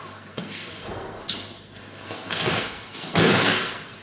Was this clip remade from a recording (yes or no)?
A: yes